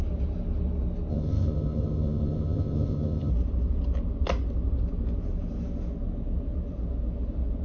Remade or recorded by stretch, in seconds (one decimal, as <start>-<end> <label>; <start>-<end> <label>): 0.0-1.1 recorded; 1.1-3.3 remade; 3.3-7.6 recorded